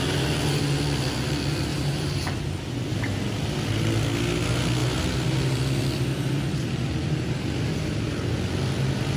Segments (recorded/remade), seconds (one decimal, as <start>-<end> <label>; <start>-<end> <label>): 0.0-1.7 recorded; 1.7-2.4 remade; 2.4-9.2 recorded